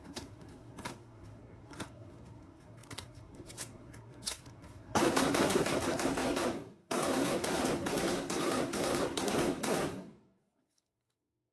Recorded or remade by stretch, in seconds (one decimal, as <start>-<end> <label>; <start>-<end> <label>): 0.0-11.5 remade